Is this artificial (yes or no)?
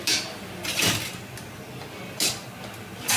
no